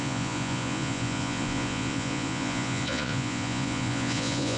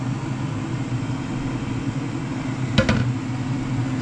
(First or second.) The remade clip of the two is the first